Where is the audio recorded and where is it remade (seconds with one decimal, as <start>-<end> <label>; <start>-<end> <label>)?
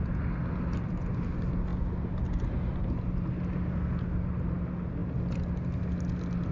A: 0.0-6.5 recorded